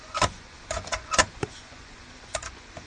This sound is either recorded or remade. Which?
remade